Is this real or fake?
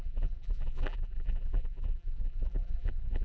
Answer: fake